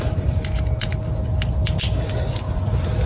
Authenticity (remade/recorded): recorded